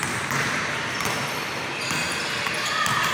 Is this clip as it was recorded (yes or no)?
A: no